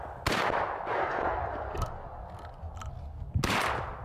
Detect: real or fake real